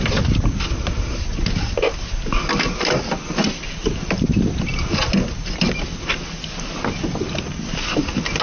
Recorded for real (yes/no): yes